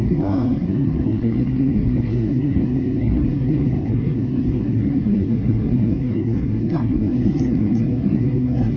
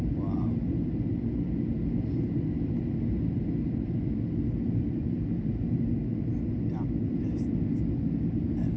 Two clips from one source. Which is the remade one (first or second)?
first